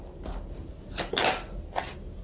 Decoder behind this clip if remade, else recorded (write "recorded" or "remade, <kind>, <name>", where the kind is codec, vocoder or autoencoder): recorded